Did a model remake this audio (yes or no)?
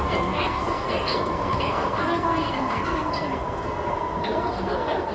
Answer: yes